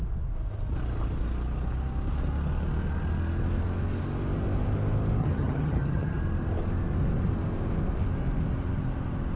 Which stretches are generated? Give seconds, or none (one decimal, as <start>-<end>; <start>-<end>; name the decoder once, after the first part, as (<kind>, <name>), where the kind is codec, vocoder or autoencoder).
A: 5.2-6.2 (vocoder, HiFi-GAN)